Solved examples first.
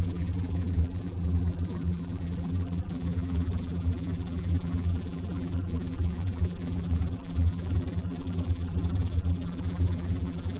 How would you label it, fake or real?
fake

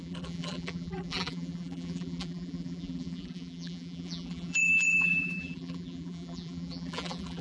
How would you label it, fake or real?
fake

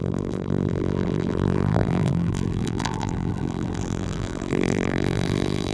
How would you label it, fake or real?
fake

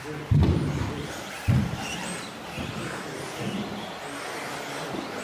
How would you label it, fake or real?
real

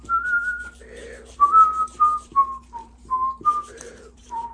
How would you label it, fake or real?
fake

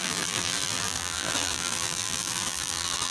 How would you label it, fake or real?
fake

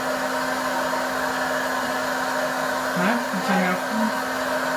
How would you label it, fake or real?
real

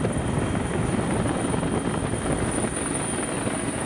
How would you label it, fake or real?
fake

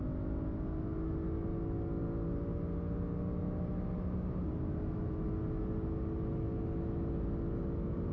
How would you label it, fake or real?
real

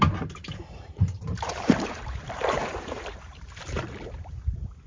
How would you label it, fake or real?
fake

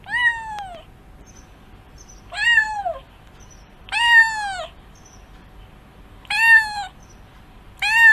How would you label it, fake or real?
real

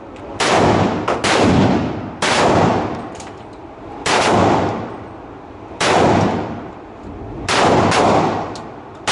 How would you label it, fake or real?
real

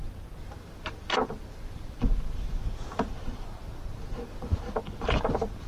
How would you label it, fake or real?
fake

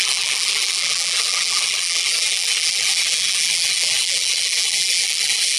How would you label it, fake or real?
fake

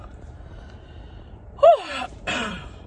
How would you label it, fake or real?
fake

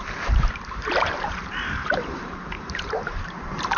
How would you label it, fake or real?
fake